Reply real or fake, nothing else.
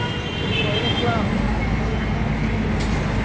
real